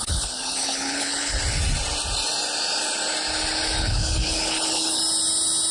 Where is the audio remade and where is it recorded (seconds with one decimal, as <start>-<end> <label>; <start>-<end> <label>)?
0.0-1.4 remade; 1.4-3.8 recorded; 3.8-5.0 remade; 5.0-5.7 recorded